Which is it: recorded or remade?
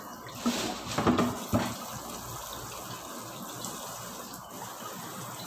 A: recorded